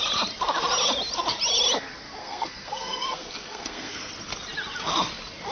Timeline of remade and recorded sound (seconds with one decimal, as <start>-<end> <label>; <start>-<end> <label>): 0.0-2.2 recorded; 2.2-4.1 remade; 4.1-5.5 recorded